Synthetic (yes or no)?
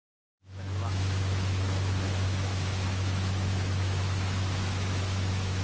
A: yes